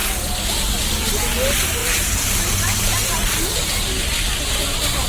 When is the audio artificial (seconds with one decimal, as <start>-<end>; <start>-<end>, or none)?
none